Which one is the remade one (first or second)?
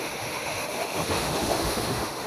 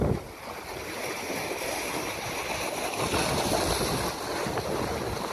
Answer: first